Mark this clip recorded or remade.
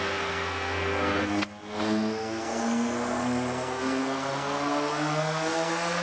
remade